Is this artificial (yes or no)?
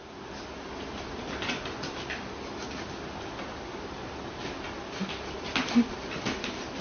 no